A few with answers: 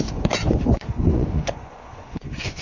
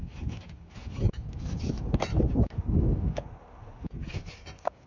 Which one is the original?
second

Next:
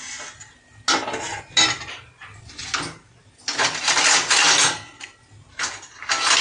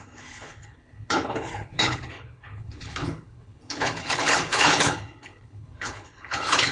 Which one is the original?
first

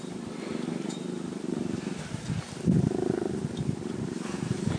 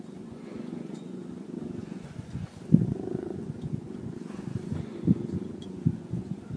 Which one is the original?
first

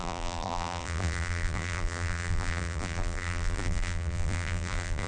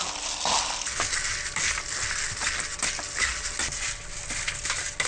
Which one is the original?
second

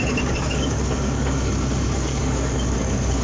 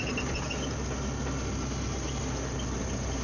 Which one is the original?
second